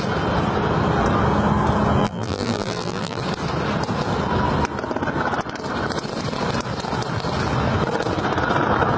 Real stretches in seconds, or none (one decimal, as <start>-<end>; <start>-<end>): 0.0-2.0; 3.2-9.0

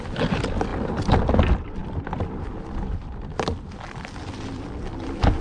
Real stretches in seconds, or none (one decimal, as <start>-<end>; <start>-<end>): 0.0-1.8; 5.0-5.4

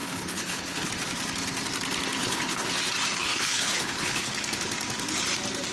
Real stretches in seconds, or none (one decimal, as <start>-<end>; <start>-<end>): 0.9-2.2; 2.7-3.2; 4.3-5.7

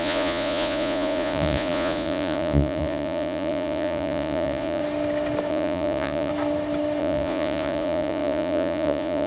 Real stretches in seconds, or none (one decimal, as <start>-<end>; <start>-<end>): 4.8-5.5; 6.3-7.0

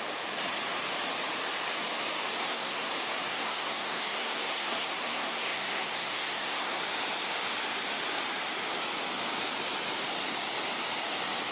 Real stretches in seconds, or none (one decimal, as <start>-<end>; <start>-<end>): 0.0-2.4; 2.9-3.3; 6.8-11.5